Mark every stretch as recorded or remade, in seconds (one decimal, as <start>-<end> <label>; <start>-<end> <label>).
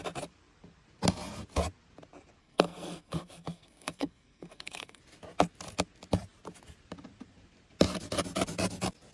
0.0-2.4 recorded; 2.4-5.0 remade; 5.0-9.1 recorded